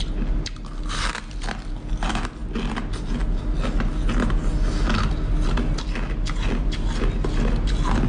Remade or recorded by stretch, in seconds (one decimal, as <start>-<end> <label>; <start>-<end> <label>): 0.0-8.1 recorded